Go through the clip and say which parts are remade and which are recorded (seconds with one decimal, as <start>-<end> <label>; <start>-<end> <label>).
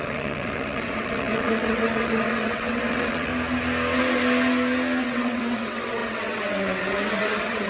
0.0-3.3 remade; 3.3-5.0 recorded; 5.0-7.7 remade